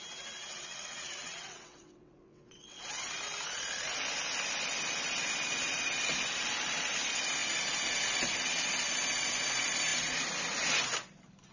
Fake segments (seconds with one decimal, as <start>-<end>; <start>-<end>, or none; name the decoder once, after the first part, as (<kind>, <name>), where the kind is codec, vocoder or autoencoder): 0.5-2.8 (vocoder, WaveNeXt)